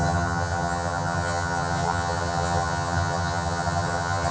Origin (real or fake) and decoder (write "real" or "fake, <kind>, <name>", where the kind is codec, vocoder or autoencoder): fake, vocoder, HiFi-GAN